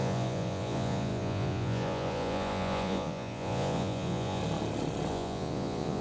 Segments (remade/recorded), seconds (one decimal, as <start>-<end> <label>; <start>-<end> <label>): 0.0-4.4 remade; 4.4-5.1 recorded; 5.1-6.0 remade